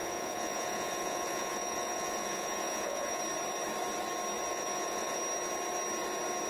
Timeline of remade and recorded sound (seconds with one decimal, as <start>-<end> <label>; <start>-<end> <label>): 0.0-3.2 remade; 3.2-4.5 recorded; 4.5-5.2 remade; 5.2-6.5 recorded